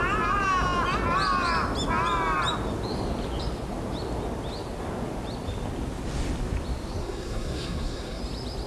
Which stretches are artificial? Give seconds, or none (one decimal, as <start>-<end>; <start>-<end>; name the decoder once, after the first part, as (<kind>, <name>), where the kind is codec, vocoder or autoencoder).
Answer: 7.0-8.2 (codec, SNAC)